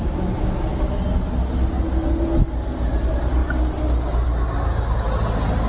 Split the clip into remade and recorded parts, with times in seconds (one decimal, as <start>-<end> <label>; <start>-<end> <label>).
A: 0.0-5.7 recorded